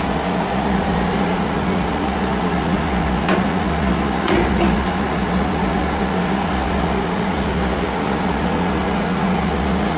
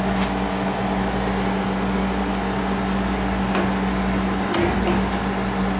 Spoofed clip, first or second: first